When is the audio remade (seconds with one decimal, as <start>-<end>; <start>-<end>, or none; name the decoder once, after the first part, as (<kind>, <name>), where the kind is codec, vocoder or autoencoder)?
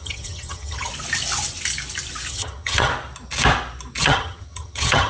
0.0-0.9 (vocoder, HiFi-GAN); 2.3-2.9; 4.0-5.1